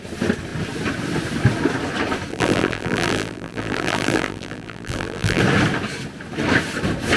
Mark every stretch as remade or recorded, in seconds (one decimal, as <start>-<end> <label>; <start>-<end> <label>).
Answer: 0.0-2.3 recorded; 2.3-5.4 remade; 5.4-7.2 recorded